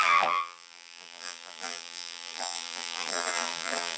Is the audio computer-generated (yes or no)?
yes